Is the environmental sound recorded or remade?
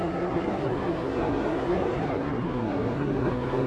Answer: remade